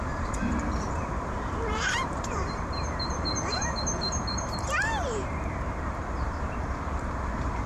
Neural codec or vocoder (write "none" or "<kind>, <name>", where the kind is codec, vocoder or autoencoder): vocoder, BigVGAN v2